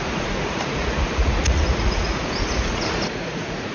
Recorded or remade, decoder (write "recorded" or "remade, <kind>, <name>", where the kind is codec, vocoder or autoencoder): remade, vocoder, Vocos